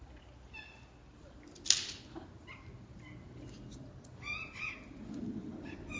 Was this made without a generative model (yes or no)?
yes